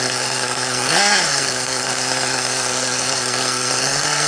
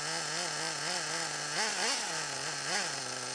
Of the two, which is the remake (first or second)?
first